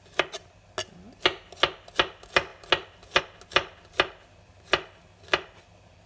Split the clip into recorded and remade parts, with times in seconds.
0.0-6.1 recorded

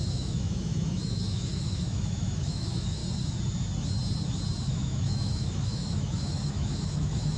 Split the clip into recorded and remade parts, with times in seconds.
0.0-3.0 remade; 3.0-4.7 recorded; 4.7-7.4 remade